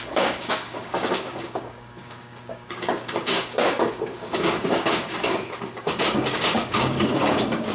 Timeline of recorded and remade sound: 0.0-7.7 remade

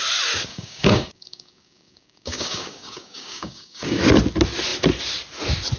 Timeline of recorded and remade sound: 0.0-0.5 recorded; 0.5-4.0 remade; 4.0-5.8 recorded

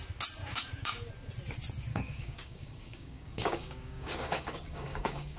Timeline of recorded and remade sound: 0.0-0.4 recorded; 0.4-1.1 remade; 1.1-1.9 recorded; 1.9-5.4 remade

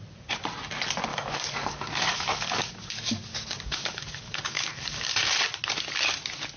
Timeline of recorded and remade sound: 0.0-1.1 recorded; 1.1-5.1 remade; 5.1-6.6 recorded

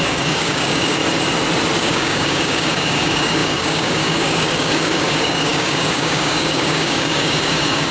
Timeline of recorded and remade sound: 0.0-1.0 remade; 1.0-1.8 recorded; 1.8-7.9 remade

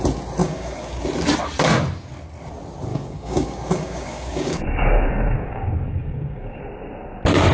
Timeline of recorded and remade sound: 0.0-0.4 recorded; 0.4-1.0 remade; 1.0-2.9 recorded; 2.9-6.6 remade; 6.6-7.5 recorded

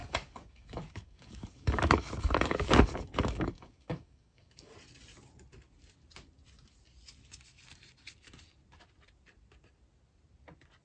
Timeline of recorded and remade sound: 0.0-4.7 remade; 4.7-10.8 recorded

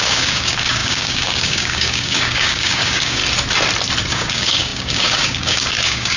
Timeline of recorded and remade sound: 0.0-3.2 remade; 3.2-4.1 recorded; 4.1-6.2 remade